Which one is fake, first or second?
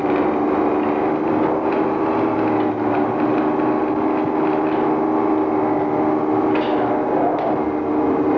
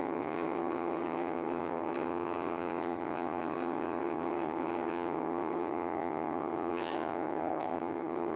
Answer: second